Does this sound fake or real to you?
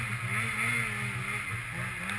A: real